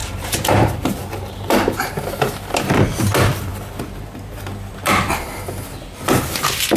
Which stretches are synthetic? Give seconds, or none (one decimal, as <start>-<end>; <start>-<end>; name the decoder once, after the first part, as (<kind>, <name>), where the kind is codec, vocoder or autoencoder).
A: 0.0-3.1 (vocoder, BigVGAN v2)